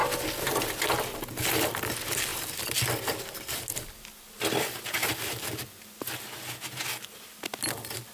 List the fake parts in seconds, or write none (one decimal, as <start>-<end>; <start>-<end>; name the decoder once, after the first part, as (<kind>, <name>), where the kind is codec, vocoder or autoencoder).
none